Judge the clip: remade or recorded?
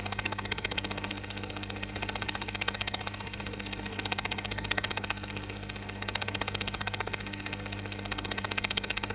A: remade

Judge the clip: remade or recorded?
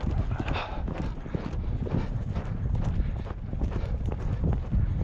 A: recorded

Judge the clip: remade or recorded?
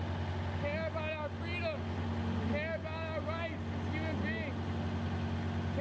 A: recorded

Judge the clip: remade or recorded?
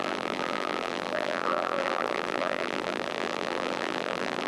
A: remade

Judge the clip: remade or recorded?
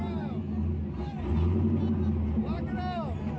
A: recorded